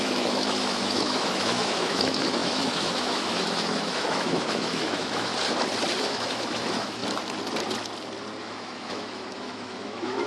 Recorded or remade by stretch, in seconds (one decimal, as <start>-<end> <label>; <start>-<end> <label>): 0.0-5.3 remade; 5.3-6.0 recorded; 6.0-7.0 remade; 7.0-8.4 recorded; 8.4-10.3 remade